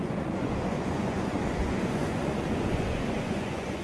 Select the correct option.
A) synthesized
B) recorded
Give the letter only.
A